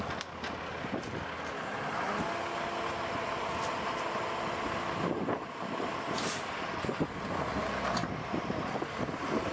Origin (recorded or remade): recorded